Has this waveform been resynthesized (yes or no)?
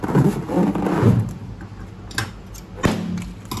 no